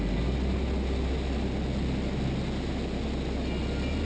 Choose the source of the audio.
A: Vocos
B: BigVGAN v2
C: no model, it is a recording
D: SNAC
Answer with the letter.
C